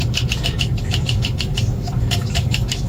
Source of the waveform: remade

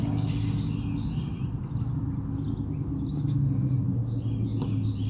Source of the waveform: recorded